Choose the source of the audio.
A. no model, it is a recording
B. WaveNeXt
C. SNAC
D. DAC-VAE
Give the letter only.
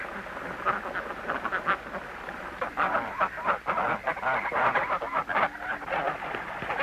A